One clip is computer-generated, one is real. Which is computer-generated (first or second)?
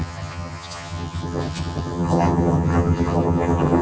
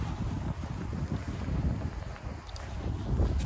first